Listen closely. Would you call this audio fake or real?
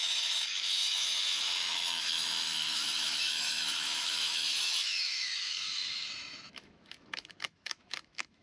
fake